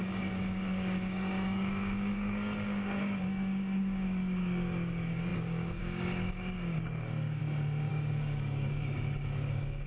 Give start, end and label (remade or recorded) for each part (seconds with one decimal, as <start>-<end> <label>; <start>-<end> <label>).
0.0-7.4 remade; 7.4-7.9 recorded; 7.9-9.9 remade